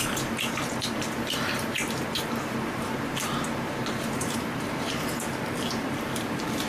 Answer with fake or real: fake